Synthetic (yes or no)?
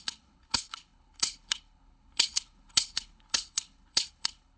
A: yes